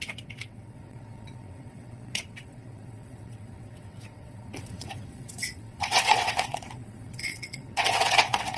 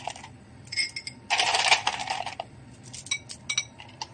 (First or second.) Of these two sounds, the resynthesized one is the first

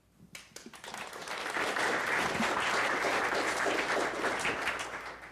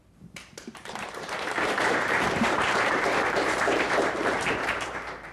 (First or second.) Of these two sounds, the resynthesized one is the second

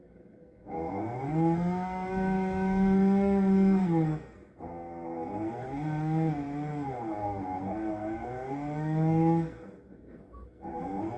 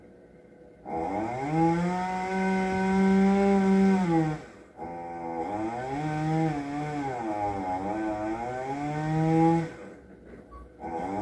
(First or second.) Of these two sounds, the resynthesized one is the first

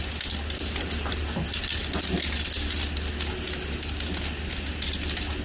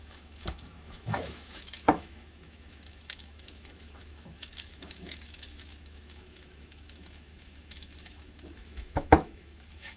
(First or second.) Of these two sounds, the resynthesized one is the second